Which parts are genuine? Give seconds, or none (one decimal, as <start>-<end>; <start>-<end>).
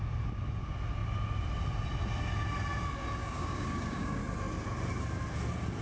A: 0.0-3.2; 4.2-5.8